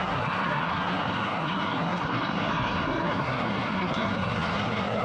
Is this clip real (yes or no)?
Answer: no